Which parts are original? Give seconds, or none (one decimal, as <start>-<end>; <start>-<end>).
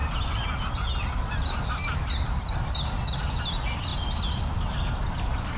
0.0-5.6